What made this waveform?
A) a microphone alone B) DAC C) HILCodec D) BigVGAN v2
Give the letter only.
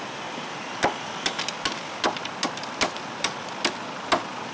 A